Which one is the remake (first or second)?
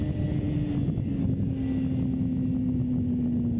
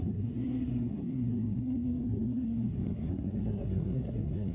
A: second